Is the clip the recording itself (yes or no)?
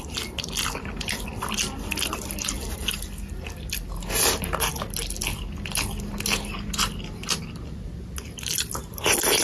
yes